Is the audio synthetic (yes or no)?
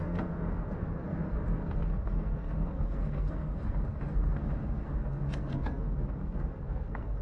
yes